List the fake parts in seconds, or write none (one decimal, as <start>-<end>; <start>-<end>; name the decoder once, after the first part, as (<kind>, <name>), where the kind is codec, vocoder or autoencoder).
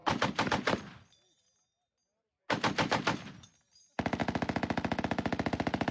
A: none